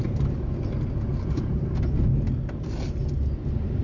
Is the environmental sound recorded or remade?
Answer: recorded